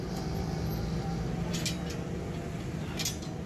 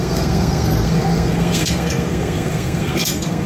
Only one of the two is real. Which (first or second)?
first